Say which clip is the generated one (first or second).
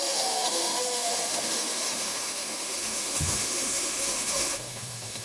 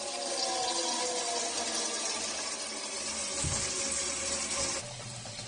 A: first